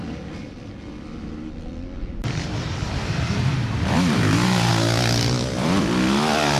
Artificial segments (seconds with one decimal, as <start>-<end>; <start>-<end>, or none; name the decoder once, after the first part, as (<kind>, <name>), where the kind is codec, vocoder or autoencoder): 2.2-4.7 (vocoder, BigVGAN v2)